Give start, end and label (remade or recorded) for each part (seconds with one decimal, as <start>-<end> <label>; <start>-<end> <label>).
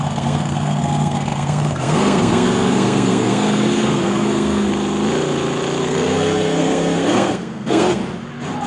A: 0.0-4.7 remade; 4.7-5.8 recorded; 5.8-8.0 remade; 8.0-8.7 recorded